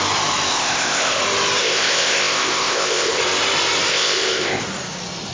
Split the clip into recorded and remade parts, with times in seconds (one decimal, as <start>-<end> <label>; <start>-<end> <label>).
0.0-0.5 recorded; 0.5-1.2 remade; 1.2-1.6 recorded; 1.6-3.2 remade; 3.2-3.9 recorded; 3.9-4.6 remade; 4.6-5.3 recorded